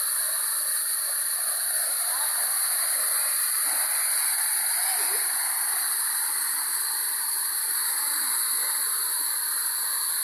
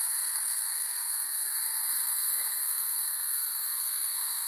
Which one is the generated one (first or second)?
second